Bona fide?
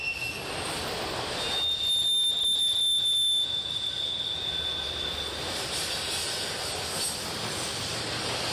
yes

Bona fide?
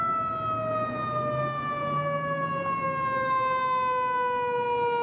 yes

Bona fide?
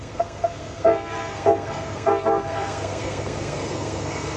no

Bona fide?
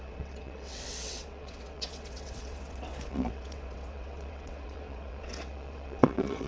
no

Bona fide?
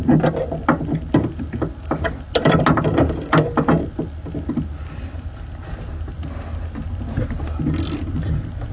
yes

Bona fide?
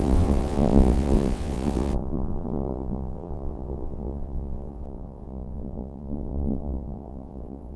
no